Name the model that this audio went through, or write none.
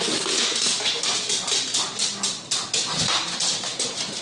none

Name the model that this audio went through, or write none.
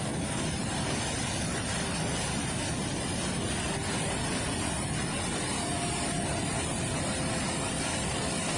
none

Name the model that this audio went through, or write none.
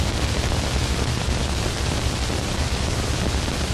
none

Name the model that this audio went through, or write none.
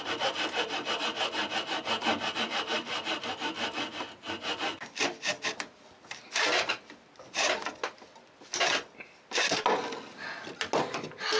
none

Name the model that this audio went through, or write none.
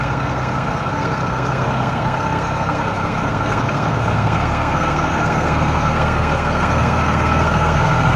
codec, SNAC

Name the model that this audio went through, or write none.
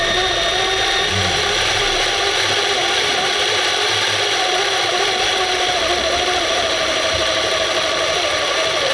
none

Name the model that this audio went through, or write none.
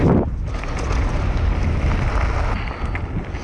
none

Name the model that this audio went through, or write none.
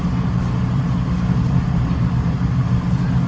none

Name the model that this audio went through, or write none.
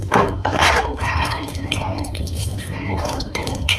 codec, SNAC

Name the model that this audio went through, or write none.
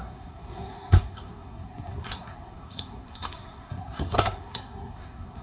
codec, SNAC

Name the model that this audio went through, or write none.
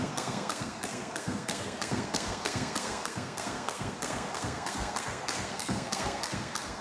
codec, SNAC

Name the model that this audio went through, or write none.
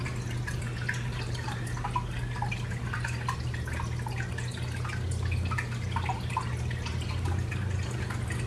none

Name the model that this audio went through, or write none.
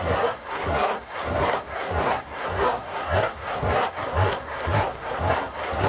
codec, SNAC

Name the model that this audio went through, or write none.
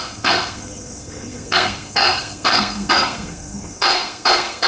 codec, SNAC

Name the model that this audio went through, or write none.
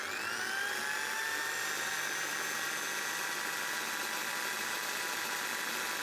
none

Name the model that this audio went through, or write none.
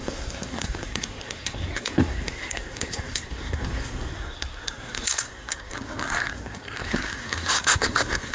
codec, SNAC